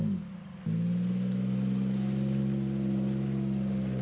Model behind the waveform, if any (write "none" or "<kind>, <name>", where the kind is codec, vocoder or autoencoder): none